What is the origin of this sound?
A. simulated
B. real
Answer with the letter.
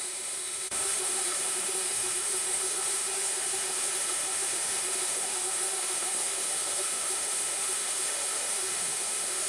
A